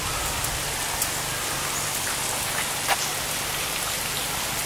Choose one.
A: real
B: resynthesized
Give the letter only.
A